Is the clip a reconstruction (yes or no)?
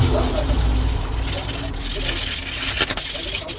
no